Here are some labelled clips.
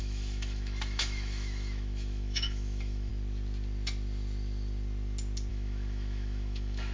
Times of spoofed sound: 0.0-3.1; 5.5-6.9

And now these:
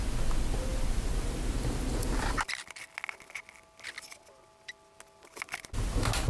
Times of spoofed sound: none

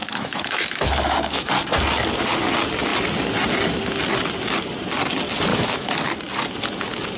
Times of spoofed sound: 0.0-1.5; 5.5-6.0

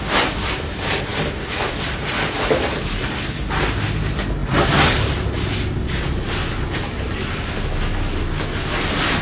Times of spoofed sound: none

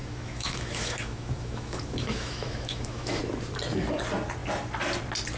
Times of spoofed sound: 0.0-3.2

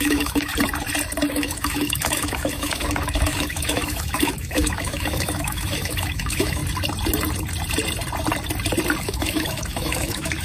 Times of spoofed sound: 0.0-0.5; 1.3-6.6; 9.0-10.4